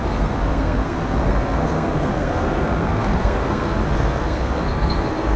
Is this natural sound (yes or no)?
no